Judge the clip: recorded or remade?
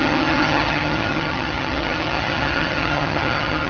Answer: remade